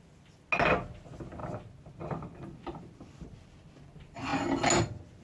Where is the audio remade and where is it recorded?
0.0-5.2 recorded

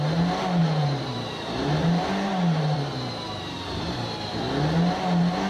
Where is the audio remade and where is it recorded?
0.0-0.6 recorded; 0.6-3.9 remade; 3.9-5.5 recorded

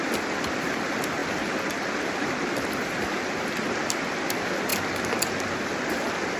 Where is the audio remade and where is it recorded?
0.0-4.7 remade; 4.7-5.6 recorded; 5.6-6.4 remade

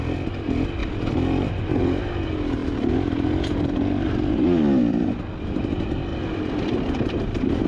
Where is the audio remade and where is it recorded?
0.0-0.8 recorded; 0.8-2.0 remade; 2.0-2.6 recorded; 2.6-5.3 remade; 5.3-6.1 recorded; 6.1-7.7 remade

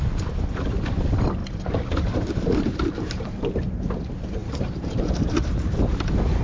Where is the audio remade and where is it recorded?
0.0-1.4 recorded; 1.4-3.6 remade; 3.6-4.4 recorded; 4.4-5.7 remade; 5.7-6.4 recorded

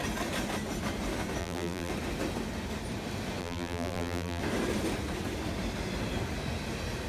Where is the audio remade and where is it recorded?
0.0-1.4 recorded; 1.4-1.9 remade; 1.9-3.4 recorded; 3.4-4.4 remade; 4.4-7.1 recorded